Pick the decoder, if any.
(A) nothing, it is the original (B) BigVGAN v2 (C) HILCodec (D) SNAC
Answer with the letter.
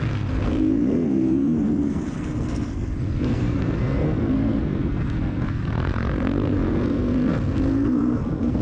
D